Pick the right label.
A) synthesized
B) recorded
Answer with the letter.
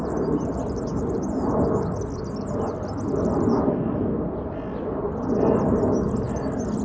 B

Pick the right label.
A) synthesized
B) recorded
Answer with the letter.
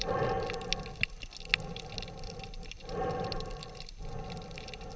B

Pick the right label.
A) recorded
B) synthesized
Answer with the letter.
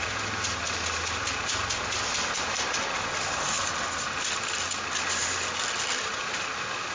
A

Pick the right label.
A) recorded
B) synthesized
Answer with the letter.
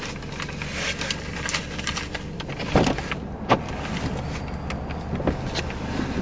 A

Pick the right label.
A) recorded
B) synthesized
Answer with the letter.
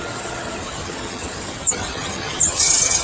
B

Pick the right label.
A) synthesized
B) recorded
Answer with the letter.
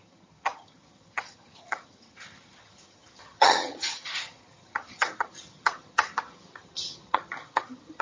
A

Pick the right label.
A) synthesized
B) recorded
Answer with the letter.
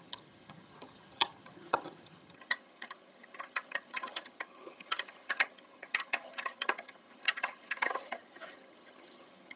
A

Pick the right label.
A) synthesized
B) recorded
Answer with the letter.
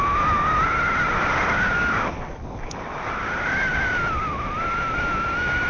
B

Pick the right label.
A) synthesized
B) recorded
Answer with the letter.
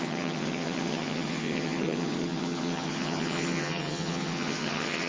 A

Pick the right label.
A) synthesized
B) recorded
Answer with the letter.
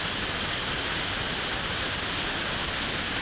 B